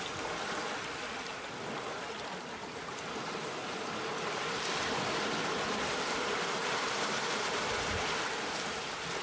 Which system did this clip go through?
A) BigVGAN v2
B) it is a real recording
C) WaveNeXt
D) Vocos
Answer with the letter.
B